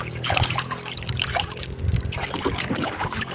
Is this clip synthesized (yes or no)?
yes